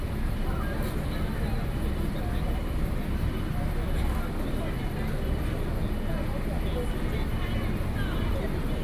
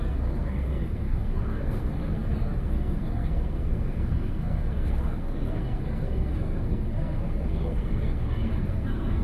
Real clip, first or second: first